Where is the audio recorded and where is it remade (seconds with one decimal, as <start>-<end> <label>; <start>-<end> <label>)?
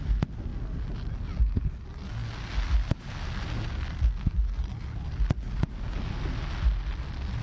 0.0-7.4 recorded